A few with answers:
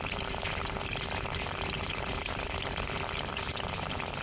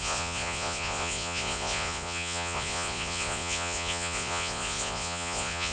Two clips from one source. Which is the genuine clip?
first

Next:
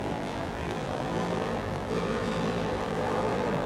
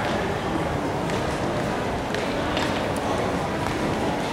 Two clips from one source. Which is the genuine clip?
second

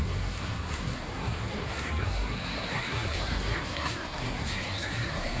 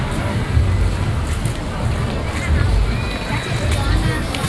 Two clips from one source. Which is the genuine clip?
second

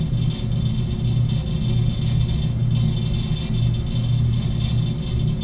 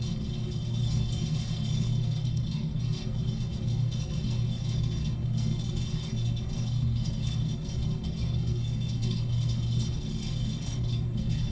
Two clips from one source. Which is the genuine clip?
first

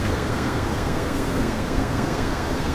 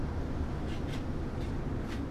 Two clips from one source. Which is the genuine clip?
second